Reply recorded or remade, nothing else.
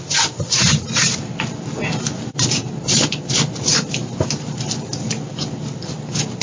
recorded